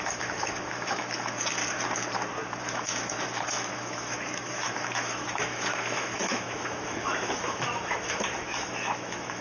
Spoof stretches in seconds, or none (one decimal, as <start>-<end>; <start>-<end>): 0.0-1.6; 2.6-9.4